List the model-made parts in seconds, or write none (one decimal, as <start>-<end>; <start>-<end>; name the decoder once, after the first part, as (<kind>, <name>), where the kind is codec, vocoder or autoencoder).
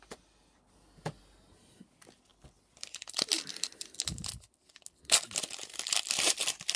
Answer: none